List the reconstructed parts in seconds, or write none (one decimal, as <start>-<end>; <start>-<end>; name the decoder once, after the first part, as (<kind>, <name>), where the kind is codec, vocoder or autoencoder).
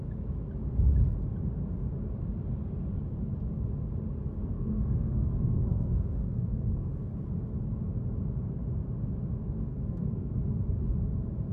4.4-7.1 (codec, SNAC); 9.7-10.3